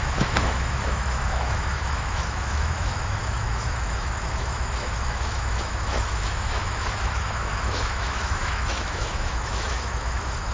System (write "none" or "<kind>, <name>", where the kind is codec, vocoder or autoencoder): autoencoder, DAC-VAE